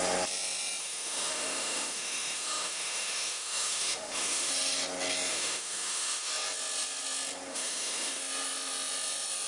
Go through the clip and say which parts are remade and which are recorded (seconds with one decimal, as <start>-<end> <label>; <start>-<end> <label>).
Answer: 0.0-0.8 recorded; 0.8-4.5 remade; 4.5-5.3 recorded; 5.3-6.3 remade; 6.3-7.5 recorded; 7.5-8.2 remade; 8.2-9.5 recorded